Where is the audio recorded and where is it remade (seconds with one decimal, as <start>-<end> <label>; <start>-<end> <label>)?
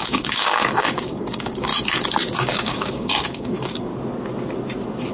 0.0-3.9 remade; 3.9-5.1 recorded